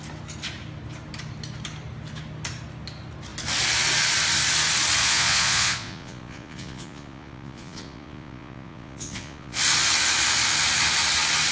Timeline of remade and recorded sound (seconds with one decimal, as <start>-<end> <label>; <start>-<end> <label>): 0.0-5.0 recorded; 5.0-9.6 remade; 9.6-11.5 recorded